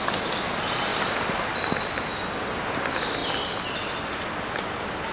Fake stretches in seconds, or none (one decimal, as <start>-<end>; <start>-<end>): 0.9-2.1